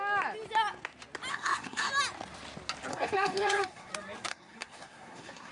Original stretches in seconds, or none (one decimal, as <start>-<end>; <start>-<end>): 0.0-1.3; 1.9-2.9; 3.9-4.3